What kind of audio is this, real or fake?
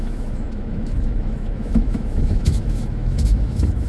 fake